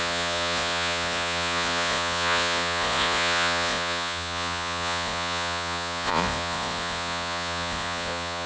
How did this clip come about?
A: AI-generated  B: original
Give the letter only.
A